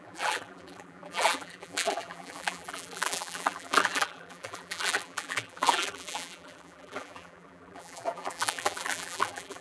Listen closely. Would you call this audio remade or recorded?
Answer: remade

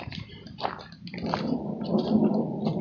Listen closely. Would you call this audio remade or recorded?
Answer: remade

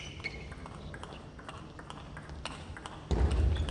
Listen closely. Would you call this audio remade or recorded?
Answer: remade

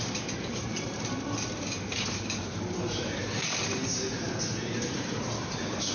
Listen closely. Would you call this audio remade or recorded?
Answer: remade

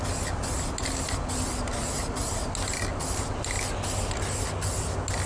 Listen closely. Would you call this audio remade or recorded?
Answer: recorded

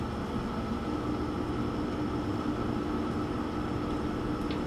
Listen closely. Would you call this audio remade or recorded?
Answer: recorded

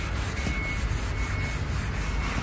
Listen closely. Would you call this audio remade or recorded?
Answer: recorded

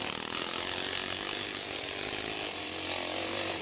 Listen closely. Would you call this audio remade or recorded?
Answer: recorded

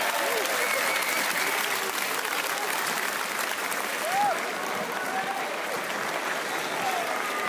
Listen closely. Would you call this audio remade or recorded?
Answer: recorded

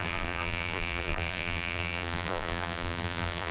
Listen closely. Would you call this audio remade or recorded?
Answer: remade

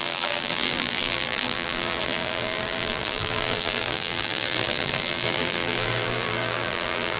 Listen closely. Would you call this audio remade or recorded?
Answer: remade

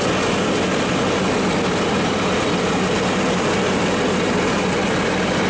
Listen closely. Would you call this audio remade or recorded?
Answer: recorded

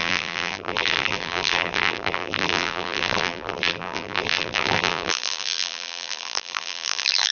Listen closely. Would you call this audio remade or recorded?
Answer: remade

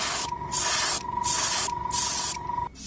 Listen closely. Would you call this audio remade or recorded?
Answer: recorded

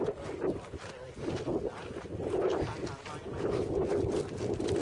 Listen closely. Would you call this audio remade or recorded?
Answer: recorded